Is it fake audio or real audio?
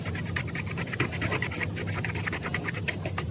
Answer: real